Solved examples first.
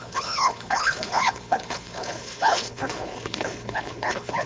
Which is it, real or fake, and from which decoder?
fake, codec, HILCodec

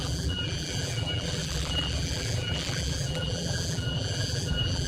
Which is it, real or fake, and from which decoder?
fake, vocoder, BigVGAN v2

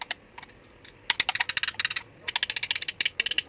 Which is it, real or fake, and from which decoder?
real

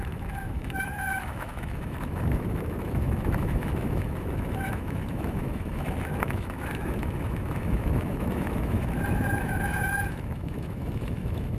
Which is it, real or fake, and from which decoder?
fake, autoencoder, DAC-VAE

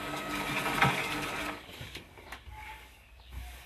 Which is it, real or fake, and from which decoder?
fake, codec, DAC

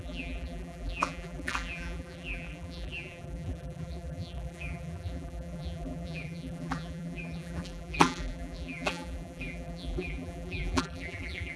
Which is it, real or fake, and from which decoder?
fake, vocoder, BigVGAN v2